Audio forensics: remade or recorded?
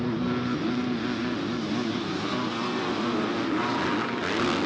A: recorded